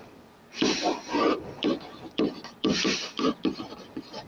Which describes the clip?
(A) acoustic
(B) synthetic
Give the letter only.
B